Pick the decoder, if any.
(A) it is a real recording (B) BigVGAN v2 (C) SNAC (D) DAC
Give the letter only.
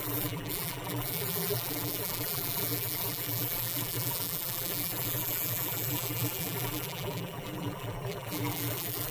B